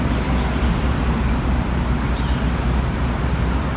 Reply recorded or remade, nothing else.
recorded